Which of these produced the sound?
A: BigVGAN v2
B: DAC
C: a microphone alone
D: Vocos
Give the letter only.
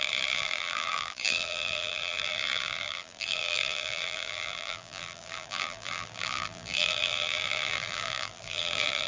A